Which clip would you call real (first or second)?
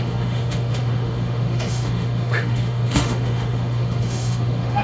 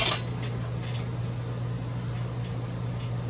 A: second